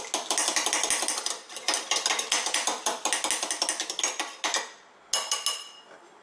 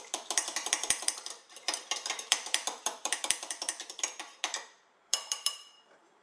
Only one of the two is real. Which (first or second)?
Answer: first